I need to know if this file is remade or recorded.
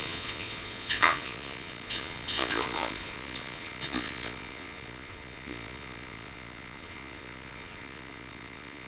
remade